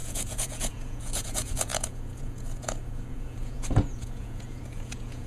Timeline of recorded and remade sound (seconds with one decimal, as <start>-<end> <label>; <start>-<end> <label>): 0.0-5.3 remade